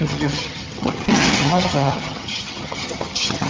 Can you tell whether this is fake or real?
fake